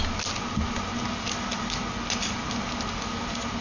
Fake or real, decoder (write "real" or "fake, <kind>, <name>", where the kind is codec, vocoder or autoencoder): real